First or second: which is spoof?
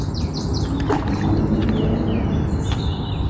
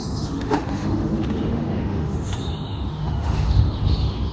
second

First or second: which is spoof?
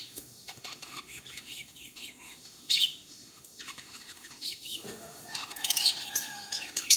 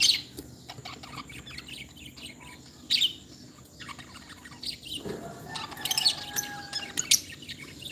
first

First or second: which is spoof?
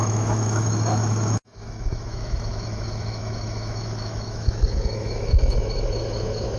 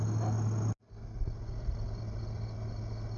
first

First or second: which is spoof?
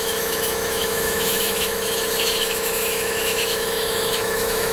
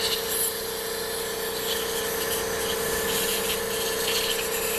first